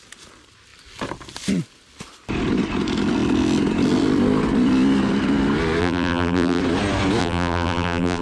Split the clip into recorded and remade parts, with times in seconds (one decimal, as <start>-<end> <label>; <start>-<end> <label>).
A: 0.0-5.8 recorded; 5.8-6.6 remade; 6.6-7.2 recorded; 7.2-8.2 remade